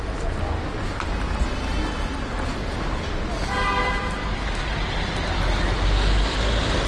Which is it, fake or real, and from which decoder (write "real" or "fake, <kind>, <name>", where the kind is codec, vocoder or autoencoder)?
real